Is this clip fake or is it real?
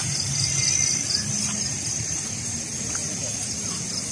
real